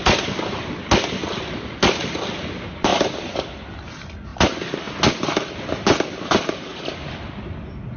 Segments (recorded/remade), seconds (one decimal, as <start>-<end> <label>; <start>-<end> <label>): 0.0-2.9 recorded; 2.9-3.6 remade; 3.6-4.3 recorded; 4.3-5.5 remade; 5.5-6.7 recorded; 6.7-7.2 remade; 7.2-8.0 recorded